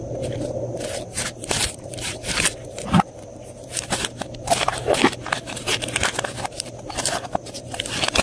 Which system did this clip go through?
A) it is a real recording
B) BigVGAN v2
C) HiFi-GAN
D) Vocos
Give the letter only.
B